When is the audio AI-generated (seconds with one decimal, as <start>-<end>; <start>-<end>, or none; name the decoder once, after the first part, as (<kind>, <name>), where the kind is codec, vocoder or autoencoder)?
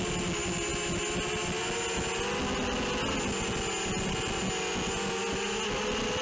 none